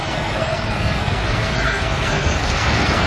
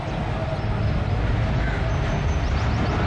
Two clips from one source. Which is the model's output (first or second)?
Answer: first